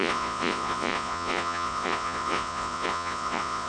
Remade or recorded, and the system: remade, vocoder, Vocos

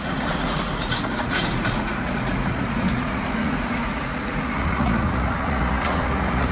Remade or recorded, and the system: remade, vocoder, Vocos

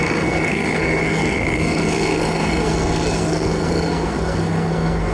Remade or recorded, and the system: remade, codec, SNAC